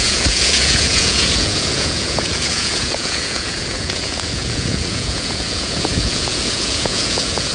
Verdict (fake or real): fake